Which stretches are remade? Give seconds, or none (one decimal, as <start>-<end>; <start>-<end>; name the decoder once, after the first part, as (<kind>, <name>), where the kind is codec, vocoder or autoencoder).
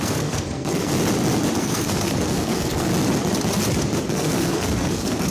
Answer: 0.0-0.9 (codec, SNAC); 1.6-2.9; 4.1-5.3